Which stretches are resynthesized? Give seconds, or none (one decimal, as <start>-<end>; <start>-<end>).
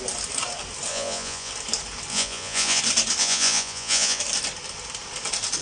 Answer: 0.9-1.5; 2.1-2.8; 3.2-4.2